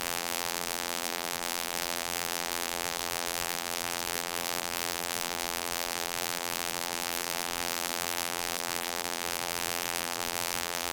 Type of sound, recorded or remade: remade